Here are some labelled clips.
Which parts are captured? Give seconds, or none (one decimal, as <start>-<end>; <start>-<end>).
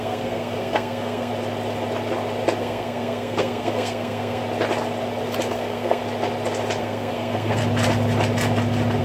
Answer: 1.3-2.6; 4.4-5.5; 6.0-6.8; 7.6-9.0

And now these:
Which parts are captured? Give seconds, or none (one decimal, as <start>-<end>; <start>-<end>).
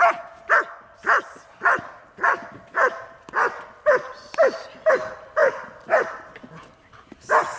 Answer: 0.0-5.4; 6.3-7.6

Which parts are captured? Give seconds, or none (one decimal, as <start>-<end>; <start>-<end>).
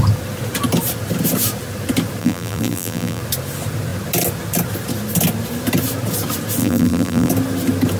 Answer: 0.0-2.2; 3.2-6.6; 7.3-8.0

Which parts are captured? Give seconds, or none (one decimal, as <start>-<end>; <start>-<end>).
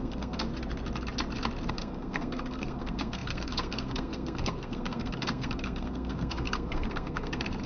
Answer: 0.5-1.7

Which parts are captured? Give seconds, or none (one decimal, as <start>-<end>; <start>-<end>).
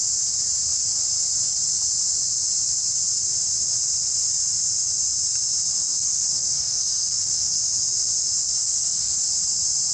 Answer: 0.0-5.9; 7.6-8.6; 9.2-9.9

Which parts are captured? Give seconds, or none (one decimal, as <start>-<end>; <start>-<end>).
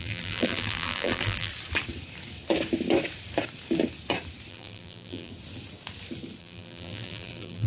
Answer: 1.5-4.5; 5.3-6.4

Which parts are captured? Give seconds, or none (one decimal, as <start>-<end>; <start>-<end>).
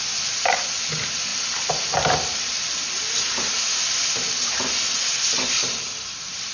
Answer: 0.0-6.5